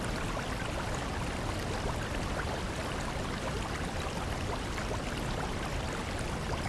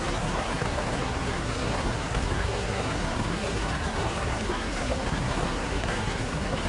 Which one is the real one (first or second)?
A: first